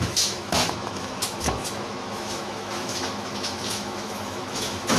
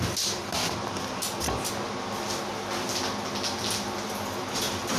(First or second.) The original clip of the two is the second